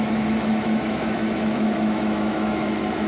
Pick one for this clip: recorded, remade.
remade